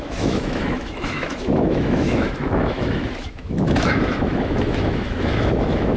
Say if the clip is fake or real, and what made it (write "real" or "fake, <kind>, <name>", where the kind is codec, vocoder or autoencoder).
fake, autoencoder, DAC-VAE